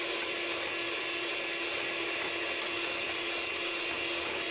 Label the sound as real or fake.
real